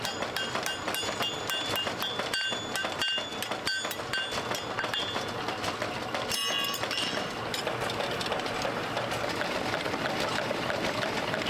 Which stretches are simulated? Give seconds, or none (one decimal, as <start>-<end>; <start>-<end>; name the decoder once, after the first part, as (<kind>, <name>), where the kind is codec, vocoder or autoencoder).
none